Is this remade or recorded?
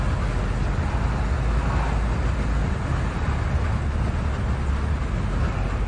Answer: recorded